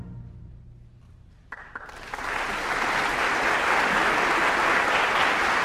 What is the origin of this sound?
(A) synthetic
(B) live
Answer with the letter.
B